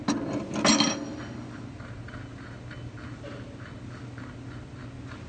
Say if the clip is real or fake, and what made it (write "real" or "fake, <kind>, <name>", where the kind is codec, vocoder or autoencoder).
real